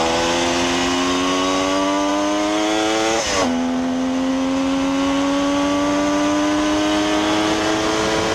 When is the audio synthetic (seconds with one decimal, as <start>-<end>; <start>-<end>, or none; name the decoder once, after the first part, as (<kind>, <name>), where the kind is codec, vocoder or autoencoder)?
none